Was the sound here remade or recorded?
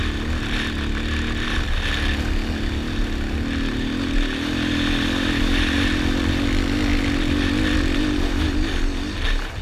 recorded